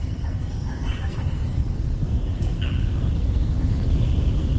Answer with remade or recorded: remade